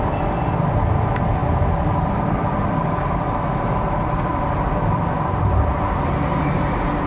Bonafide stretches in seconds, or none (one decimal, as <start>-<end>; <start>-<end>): 0.0-1.4; 5.7-7.1